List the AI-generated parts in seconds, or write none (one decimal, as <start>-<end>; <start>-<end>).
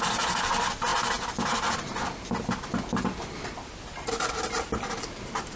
none